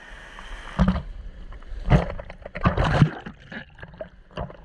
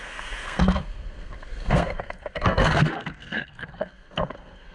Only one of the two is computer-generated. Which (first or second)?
second